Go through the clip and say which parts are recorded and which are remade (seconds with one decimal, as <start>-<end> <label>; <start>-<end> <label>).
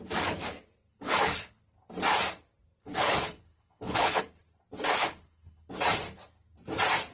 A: 0.0-0.9 recorded; 0.9-1.6 remade; 1.6-2.8 recorded; 2.8-4.2 remade; 4.2-4.9 recorded; 4.9-5.7 remade; 5.7-7.1 recorded